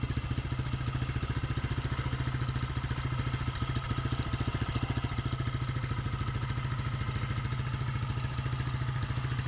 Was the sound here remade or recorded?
recorded